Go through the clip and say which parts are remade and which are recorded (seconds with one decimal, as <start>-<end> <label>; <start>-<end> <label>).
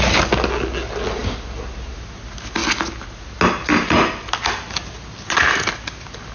0.0-6.3 recorded